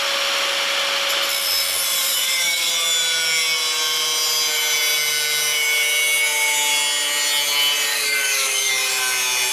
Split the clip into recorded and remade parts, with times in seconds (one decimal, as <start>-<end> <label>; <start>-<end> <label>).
0.0-2.0 recorded; 2.0-2.7 remade; 2.7-7.9 recorded; 7.9-8.7 remade; 8.7-9.5 recorded